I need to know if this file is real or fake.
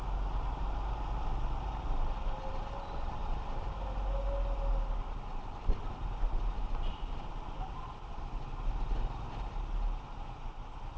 real